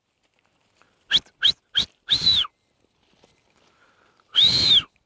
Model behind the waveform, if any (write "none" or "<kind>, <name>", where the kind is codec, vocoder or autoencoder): none